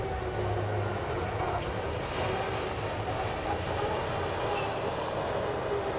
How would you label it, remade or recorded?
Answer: recorded